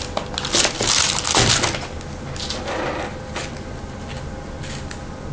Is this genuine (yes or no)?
yes